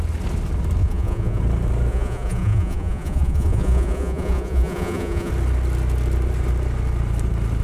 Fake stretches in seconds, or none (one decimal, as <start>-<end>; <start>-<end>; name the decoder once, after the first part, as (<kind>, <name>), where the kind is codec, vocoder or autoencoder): 0.8-1.4 (vocoder, Vocos); 1.9-5.3